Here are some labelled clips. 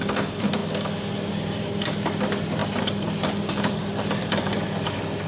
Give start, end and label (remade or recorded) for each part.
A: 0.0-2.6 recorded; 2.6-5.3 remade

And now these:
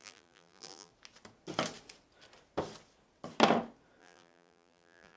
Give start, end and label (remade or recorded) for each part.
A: 0.0-0.9 remade; 0.9-4.0 recorded; 4.0-5.2 remade

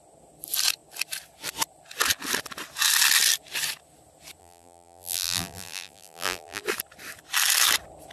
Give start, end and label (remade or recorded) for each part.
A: 0.0-4.4 recorded; 4.4-6.6 remade; 6.6-8.1 recorded

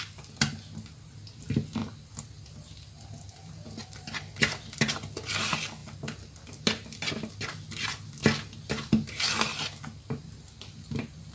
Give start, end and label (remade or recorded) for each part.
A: 0.0-11.3 recorded